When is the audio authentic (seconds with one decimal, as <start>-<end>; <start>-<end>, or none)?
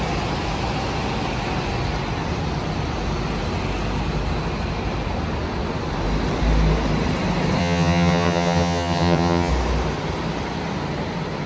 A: 0.0-7.6; 9.5-11.5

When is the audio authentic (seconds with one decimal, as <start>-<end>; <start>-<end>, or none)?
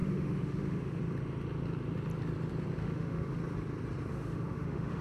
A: 1.0-2.8; 3.4-4.1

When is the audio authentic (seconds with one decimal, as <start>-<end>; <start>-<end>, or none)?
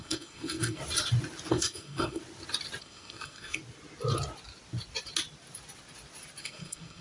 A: 0.8-1.5; 2.2-2.8; 3.6-6.4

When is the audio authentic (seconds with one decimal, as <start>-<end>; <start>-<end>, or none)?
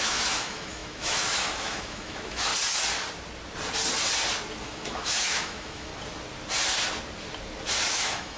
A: 2.5-4.6; 5.9-7.9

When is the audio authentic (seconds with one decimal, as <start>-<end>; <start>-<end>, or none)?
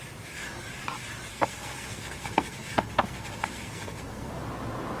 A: 0.0-1.3; 4.3-5.0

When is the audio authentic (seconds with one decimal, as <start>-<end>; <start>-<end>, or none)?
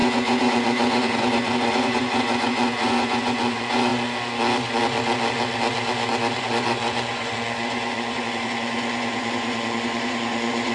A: 3.9-6.4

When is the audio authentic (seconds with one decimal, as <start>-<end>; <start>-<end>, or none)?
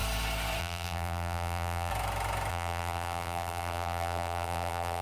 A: 0.0-0.6; 1.9-2.5